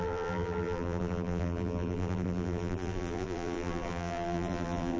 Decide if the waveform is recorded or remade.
remade